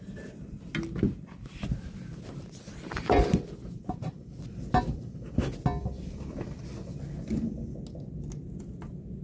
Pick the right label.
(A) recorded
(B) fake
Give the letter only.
A